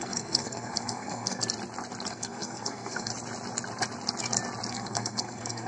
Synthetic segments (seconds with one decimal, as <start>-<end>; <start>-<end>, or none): 0.0-1.4; 2.1-3.1; 4.7-5.7